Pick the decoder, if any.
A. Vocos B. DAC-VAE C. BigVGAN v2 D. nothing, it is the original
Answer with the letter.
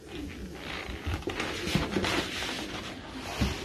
D